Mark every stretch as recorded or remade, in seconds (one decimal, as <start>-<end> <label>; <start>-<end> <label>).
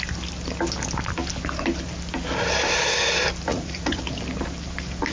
0.0-3.5 recorded; 3.5-4.0 remade; 4.0-5.1 recorded